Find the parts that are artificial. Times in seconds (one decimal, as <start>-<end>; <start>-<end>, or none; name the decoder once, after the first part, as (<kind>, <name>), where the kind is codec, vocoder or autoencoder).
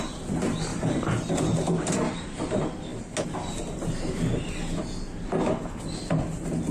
0.7-1.3 (vocoder, BigVGAN v2)